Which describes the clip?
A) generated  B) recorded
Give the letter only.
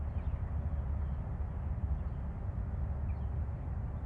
B